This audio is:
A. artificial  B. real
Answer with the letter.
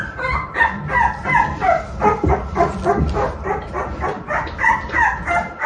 B